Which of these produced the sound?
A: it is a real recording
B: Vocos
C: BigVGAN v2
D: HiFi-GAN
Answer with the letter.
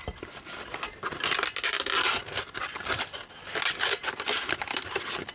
A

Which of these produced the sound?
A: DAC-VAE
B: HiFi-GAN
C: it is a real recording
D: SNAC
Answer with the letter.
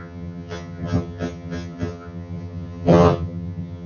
B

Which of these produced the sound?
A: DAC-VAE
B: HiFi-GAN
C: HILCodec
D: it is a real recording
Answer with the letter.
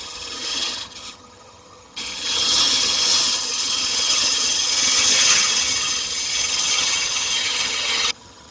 B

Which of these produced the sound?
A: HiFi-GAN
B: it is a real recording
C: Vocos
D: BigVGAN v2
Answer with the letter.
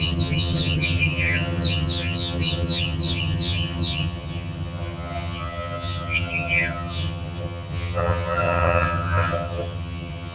A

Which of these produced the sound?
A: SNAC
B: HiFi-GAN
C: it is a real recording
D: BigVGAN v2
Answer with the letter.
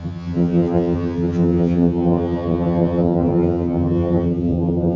B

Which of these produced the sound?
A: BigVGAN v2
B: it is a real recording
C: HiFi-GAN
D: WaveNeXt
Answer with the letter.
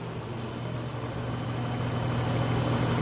B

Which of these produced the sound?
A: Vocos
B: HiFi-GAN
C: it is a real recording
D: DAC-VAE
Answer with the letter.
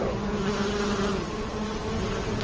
C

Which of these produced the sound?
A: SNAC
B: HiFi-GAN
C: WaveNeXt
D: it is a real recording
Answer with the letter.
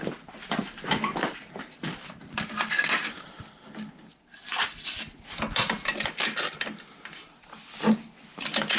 D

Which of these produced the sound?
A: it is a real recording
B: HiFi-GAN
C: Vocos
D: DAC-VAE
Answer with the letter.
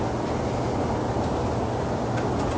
A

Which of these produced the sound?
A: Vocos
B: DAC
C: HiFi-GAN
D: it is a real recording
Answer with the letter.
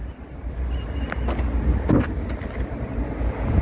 D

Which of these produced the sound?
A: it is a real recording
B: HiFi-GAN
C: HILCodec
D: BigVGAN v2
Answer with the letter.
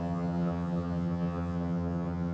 B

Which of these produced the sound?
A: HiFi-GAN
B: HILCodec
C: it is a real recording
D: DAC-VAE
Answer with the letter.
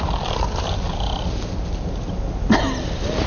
C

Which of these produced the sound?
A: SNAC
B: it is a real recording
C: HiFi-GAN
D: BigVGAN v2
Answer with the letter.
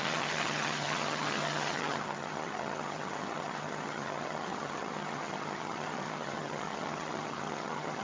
C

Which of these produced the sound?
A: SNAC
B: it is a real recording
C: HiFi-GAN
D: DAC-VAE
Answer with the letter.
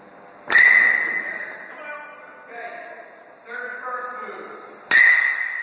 B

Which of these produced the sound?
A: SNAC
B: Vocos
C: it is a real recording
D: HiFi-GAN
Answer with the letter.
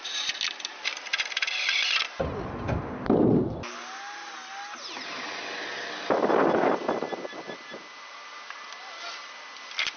C